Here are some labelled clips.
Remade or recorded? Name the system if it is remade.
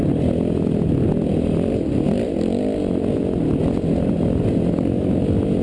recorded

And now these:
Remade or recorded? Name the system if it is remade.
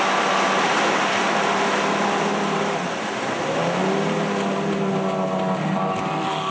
recorded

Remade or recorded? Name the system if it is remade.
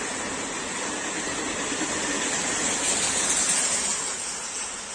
recorded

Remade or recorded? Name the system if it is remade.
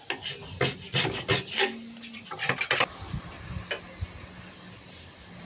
recorded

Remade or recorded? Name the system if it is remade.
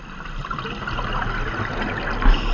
recorded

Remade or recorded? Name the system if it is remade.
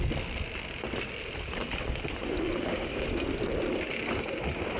recorded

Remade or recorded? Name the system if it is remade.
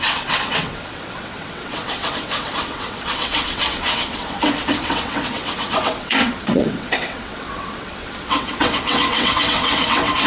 remade, vocoder, WaveNeXt